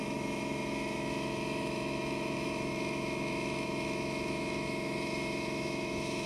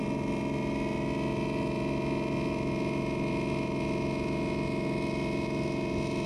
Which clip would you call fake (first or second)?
first